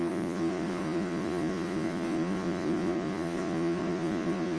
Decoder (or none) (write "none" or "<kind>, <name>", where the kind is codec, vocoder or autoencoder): vocoder, Vocos